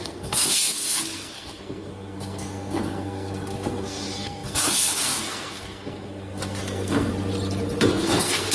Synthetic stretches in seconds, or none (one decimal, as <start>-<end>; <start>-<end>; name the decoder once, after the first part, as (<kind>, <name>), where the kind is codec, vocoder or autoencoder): 0.0-7.1 (codec, SNAC); 7.8-8.5